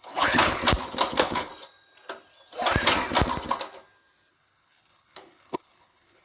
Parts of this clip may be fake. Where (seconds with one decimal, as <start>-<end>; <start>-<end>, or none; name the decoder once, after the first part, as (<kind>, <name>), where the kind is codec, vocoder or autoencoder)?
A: 0.0-0.6 (codec, HILCodec); 1.1-1.5; 4.3-6.2